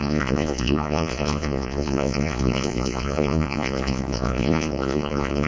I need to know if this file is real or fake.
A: fake